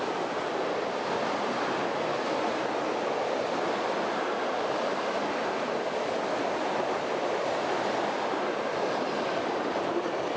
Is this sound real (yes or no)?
yes